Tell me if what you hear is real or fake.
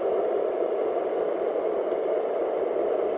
real